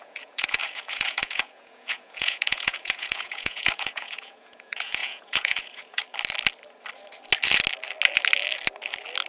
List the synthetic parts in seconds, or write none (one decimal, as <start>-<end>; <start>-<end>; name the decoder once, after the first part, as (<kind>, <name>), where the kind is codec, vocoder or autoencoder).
0.0-6.0 (vocoder, Vocos)